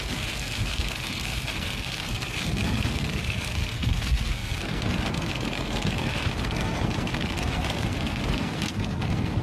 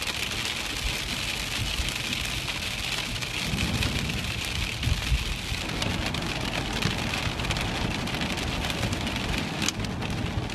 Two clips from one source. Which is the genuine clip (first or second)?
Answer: second